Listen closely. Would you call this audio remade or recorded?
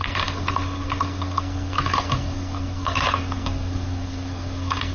remade